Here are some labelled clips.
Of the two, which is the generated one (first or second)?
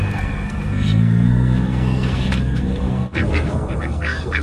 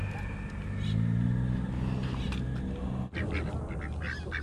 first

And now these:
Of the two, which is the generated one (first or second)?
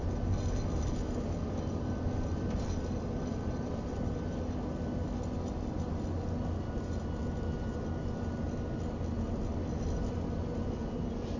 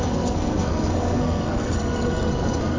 second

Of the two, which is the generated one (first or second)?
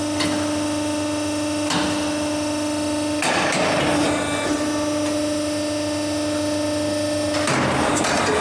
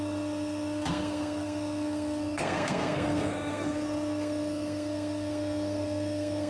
second